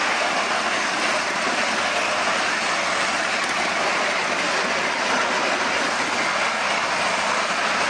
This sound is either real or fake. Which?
real